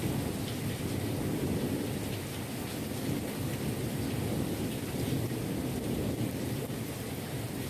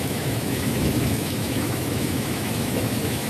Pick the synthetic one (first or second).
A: second